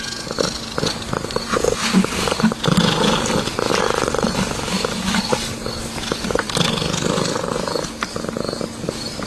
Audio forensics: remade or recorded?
recorded